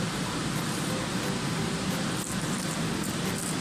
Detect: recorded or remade recorded